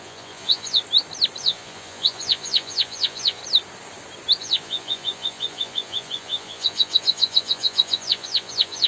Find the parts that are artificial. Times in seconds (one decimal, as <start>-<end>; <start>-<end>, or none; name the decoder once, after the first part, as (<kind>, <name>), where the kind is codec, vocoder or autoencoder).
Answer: 0.0-0.8 (vocoder, Vocos); 1.4-3.4; 4.4-8.9

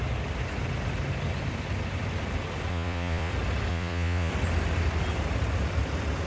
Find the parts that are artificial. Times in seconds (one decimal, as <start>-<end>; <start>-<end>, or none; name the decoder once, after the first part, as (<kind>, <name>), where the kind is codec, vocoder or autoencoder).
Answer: 2.7-3.3 (vocoder, Vocos); 3.7-4.3

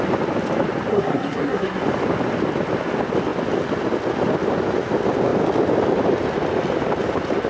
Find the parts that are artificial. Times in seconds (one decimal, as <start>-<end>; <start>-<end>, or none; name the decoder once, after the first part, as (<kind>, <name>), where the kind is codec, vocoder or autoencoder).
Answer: 0.9-1.8 (codec, SNAC)

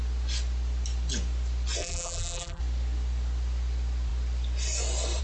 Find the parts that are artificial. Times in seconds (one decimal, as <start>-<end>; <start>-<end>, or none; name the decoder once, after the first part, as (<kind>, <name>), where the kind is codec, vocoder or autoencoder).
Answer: 1.8-2.6 (vocoder, BigVGAN v2)

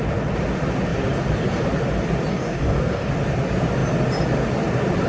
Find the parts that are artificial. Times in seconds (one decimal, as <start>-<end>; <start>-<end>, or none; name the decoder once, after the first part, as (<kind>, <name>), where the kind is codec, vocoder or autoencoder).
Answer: 2.3-3.1 (codec, DAC)

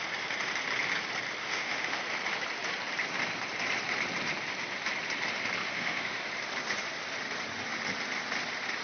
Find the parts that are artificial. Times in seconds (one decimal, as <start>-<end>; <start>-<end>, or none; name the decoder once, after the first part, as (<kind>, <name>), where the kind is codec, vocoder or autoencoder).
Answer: 1.4-2.0 (autoencoder, DAC-VAE); 5.6-6.2

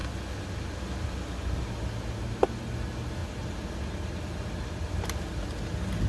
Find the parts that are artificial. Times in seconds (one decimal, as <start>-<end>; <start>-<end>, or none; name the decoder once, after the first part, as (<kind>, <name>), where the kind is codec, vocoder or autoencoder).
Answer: none